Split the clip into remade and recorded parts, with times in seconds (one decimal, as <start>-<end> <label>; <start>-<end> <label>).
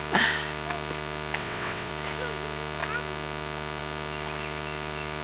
0.0-1.4 recorded; 1.4-1.9 remade; 1.9-5.2 recorded